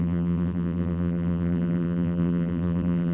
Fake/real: fake